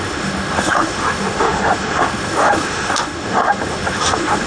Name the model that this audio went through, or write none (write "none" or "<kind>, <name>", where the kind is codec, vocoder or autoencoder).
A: autoencoder, DAC-VAE